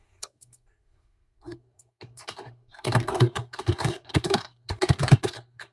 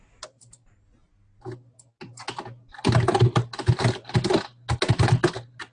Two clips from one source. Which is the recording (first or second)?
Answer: second